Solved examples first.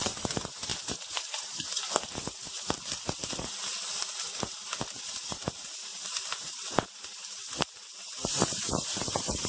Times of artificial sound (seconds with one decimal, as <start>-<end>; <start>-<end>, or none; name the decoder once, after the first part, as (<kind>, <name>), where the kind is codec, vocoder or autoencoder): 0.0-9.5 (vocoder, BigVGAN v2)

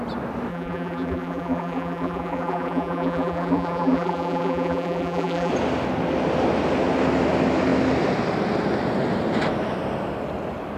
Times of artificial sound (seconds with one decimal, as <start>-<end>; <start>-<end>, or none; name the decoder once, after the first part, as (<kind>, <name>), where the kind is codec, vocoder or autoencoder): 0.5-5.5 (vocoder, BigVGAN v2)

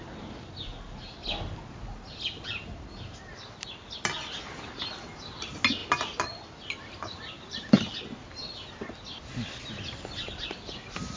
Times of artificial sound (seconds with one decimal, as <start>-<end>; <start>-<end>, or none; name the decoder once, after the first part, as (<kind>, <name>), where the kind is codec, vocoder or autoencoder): none

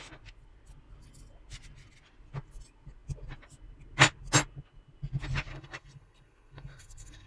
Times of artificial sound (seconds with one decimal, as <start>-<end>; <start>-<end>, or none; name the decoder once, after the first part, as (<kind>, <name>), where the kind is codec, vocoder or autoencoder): 5.5-7.3 (codec, SNAC)